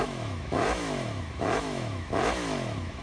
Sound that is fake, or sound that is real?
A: fake